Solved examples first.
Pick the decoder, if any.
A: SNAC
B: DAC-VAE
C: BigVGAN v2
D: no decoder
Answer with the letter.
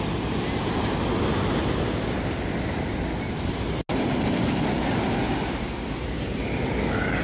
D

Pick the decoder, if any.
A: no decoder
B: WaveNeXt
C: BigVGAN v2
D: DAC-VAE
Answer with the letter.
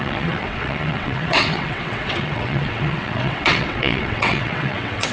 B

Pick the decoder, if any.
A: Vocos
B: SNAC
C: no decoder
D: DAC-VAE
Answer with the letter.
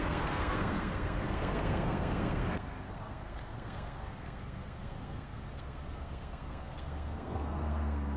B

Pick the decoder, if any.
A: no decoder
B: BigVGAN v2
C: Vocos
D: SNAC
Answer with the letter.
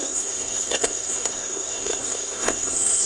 D